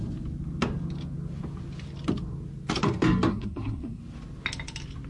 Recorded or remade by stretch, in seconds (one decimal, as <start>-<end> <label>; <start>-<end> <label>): 0.0-3.3 recorded; 3.3-4.0 remade; 4.0-5.1 recorded